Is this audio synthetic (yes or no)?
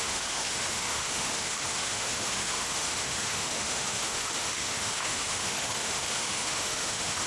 yes